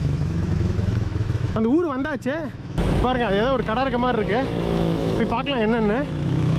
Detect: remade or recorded remade